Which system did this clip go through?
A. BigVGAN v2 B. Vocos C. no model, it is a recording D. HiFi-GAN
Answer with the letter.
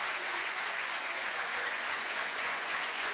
B